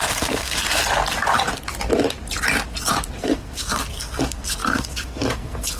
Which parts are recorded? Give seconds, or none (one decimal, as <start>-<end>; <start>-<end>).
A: 0.8-3.2